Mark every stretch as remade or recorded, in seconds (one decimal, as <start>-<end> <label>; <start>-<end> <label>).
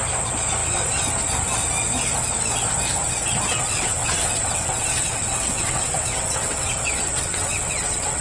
0.0-3.5 recorded; 3.5-8.2 remade